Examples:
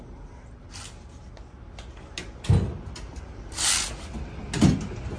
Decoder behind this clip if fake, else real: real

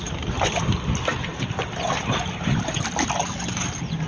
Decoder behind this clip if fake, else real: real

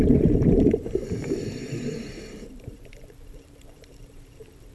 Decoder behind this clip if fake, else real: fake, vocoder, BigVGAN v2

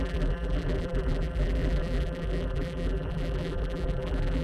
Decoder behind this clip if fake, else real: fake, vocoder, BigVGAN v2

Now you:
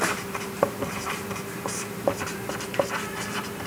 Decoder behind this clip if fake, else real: fake, vocoder, BigVGAN v2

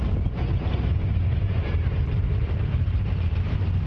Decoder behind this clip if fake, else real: fake, vocoder, BigVGAN v2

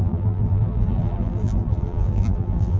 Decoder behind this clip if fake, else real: fake, vocoder, BigVGAN v2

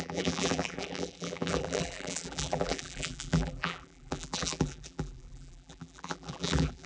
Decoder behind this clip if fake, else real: fake, vocoder, BigVGAN v2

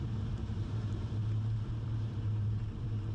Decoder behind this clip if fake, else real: fake, vocoder, BigVGAN v2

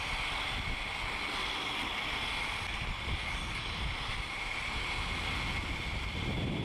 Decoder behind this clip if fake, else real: real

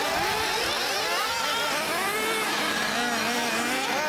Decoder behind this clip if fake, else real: real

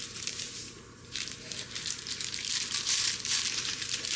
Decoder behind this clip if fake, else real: fake, vocoder, BigVGAN v2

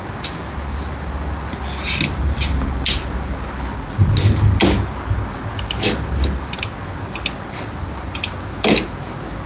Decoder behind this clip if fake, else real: real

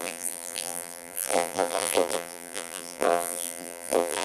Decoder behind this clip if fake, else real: fake, vocoder, BigVGAN v2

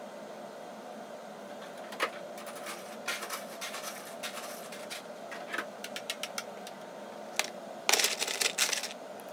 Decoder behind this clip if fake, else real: real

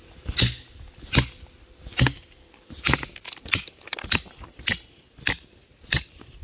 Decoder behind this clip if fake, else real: real